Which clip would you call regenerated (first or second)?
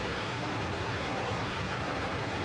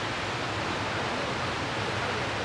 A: first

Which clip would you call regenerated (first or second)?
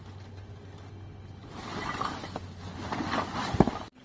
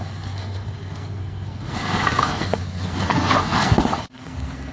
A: second